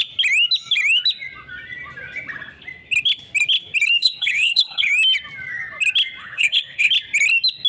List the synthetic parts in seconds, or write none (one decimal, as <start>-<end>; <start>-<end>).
4.0-4.9; 6.2-6.9